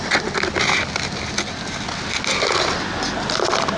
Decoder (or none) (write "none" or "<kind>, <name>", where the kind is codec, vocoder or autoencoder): none